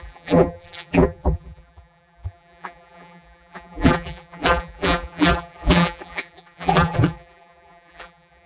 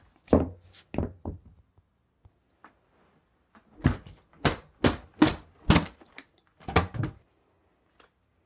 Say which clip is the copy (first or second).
first